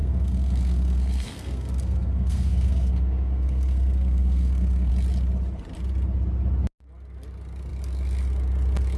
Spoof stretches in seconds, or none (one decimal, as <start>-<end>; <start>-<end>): 0.0-4.9